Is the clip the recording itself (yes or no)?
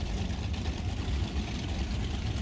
no